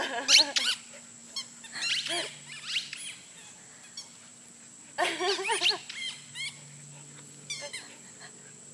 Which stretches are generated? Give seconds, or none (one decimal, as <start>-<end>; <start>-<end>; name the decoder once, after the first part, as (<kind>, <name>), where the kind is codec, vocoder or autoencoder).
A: none